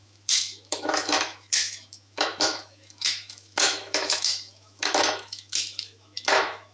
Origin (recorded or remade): remade